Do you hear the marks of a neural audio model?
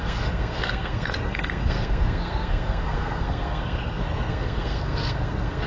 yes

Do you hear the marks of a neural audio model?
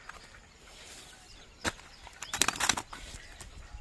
no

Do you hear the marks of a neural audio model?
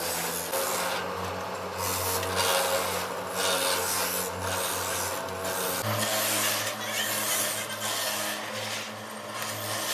no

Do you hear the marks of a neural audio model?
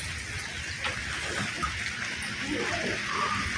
no